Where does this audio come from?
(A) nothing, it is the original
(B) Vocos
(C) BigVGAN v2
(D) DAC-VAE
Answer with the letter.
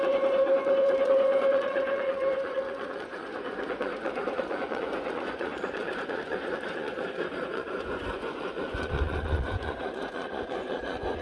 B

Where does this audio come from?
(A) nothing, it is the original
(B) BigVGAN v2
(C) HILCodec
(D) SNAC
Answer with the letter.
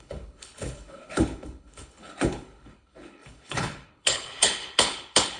C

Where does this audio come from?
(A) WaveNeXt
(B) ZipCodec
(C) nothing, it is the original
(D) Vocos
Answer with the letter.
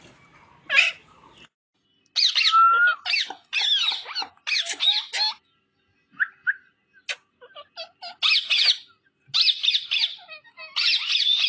C